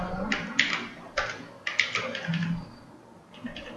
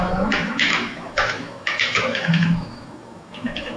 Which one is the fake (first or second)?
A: second